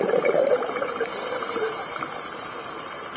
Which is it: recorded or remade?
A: remade